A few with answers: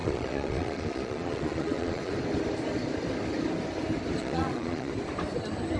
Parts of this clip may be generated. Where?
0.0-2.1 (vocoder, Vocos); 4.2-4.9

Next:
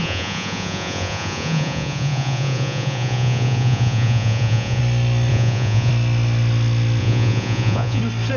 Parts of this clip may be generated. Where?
0.0-4.8 (vocoder, Vocos); 5.3-5.9; 7.0-8.0

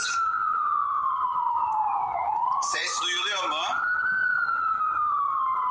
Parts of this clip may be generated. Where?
0.4-3.0 (vocoder, Vocos); 4.2-4.8

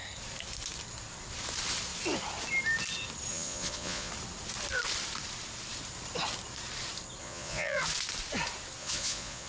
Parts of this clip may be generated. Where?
3.3-4.1 (vocoder, Vocos); 7.2-7.8; 8.8-9.5

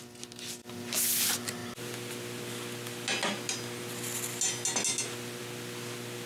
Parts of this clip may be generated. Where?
none

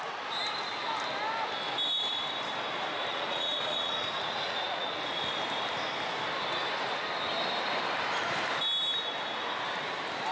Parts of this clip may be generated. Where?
3.1-5.0 (vocoder, Vocos)

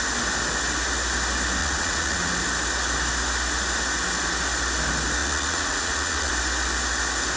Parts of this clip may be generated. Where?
1.6-2.3 (vocoder, Vocos); 5.2-6.3